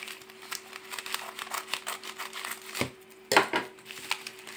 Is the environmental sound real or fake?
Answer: real